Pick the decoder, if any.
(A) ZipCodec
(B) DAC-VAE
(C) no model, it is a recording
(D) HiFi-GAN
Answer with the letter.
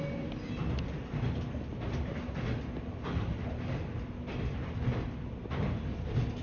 C